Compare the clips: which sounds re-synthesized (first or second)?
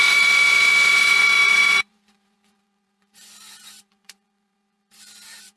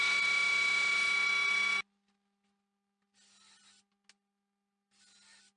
first